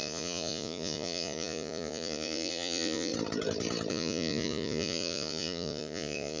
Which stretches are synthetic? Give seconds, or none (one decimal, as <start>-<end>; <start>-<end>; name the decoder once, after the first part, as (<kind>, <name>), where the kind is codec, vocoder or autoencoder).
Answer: 0.0-3.1 (vocoder, Vocos); 3.9-6.4